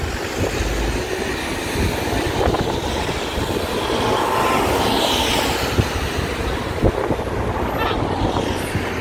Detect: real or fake real